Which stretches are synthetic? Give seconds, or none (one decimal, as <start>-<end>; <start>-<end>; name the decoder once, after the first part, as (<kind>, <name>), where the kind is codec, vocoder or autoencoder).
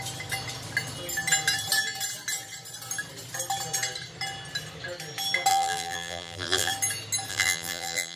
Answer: 5.5-6.7 (vocoder, BigVGAN v2); 7.3-8.2